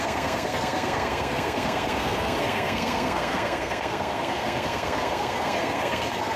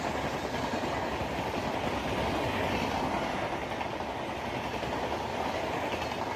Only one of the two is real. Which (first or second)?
second